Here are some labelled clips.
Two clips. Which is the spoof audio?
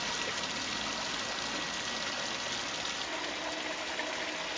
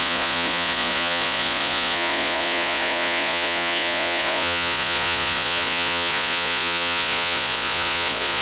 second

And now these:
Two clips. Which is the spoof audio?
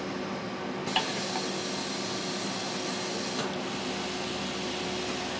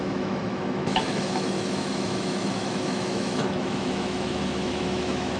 second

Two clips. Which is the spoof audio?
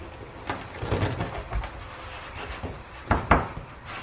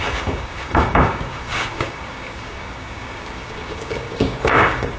second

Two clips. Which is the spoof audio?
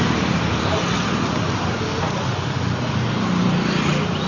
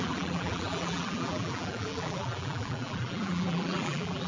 second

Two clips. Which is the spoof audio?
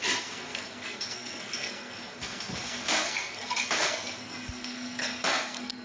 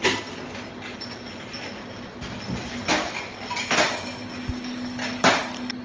first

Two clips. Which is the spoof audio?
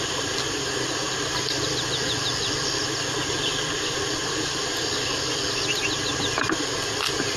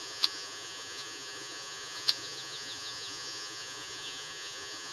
second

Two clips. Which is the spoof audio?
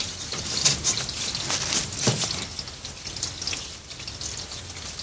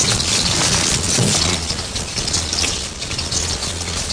second